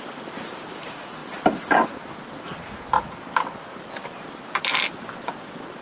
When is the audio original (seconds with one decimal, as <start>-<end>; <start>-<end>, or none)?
0.0-5.8